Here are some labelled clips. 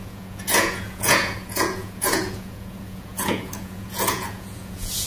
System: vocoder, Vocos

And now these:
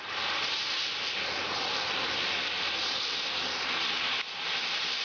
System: none